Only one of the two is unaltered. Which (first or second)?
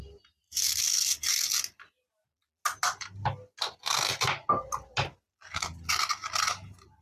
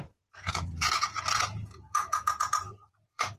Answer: first